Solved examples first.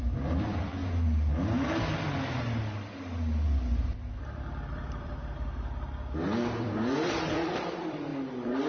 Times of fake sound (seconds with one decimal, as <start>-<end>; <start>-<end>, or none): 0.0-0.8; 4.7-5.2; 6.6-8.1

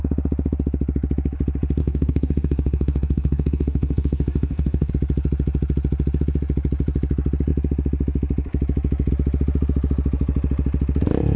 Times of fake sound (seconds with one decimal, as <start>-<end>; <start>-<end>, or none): 1.8-4.9

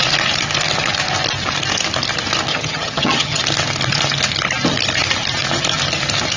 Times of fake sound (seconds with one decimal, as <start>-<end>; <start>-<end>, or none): 2.5-3.4